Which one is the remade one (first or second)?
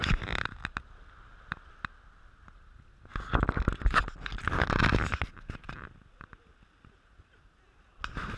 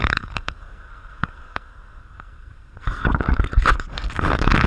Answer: second